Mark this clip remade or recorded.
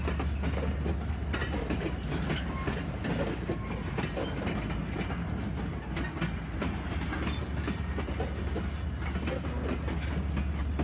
recorded